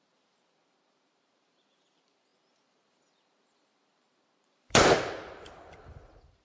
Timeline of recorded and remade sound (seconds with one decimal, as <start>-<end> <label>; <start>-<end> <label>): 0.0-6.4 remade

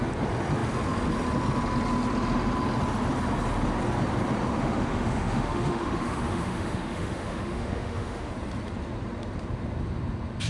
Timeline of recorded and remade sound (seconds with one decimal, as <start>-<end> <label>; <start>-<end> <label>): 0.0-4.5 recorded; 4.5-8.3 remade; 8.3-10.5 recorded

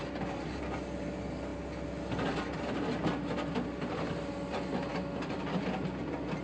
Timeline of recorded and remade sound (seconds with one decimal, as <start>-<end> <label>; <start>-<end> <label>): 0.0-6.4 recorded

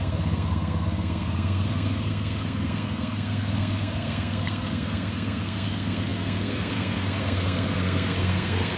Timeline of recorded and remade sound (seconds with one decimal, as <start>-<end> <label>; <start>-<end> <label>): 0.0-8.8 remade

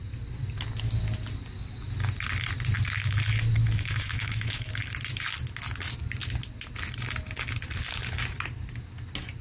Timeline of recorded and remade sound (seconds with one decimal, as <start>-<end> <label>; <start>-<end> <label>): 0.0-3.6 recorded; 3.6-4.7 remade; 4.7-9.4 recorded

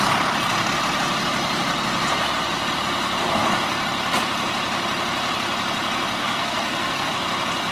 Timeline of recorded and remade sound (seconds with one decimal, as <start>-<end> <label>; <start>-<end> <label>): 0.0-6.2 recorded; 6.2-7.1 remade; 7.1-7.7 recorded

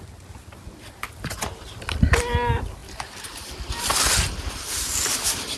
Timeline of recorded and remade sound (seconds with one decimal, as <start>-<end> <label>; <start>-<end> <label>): 0.0-5.6 recorded